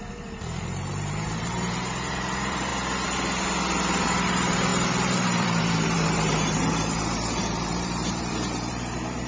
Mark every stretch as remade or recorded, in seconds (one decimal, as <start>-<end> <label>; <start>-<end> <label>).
0.0-2.7 remade; 2.7-4.0 recorded; 4.0-9.3 remade